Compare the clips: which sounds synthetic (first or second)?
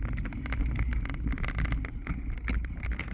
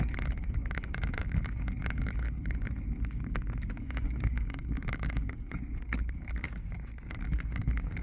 second